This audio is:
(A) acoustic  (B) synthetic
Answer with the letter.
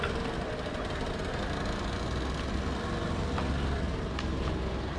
A